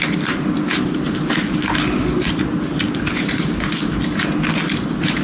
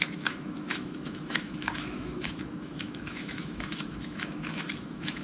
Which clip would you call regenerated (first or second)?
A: second